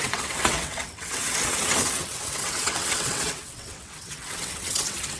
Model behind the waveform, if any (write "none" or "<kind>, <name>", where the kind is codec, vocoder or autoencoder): vocoder, WaveNeXt